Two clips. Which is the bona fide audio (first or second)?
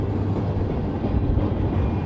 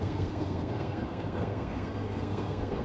first